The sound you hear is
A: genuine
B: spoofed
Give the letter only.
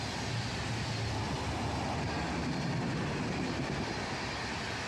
A